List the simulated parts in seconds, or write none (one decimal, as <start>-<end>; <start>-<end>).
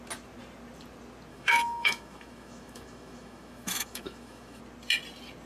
1.3-4.6